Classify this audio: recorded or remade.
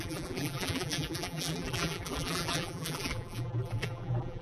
remade